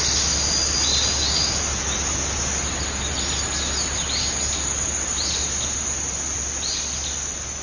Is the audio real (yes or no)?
yes